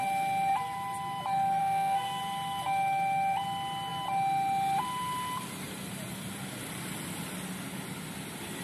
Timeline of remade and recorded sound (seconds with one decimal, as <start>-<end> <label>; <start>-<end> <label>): 0.0-1.6 recorded; 1.6-2.2 remade; 2.2-8.6 recorded